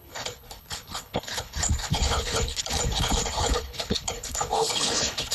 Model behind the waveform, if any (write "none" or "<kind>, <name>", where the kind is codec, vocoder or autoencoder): codec, HILCodec